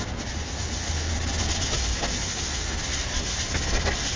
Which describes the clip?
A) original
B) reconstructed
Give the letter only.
A